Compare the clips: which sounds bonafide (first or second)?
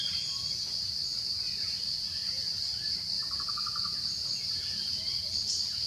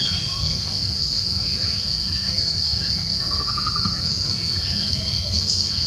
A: first